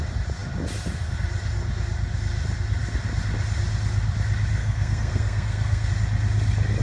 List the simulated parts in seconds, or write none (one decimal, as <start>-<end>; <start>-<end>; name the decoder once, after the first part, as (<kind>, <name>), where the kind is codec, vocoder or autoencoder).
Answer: 4.6-5.9 (codec, SNAC)